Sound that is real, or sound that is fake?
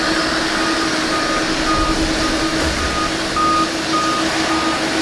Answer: real